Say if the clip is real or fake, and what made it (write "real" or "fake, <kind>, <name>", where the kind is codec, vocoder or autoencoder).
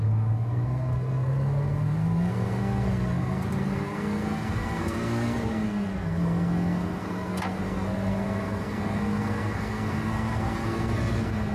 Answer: fake, codec, SNAC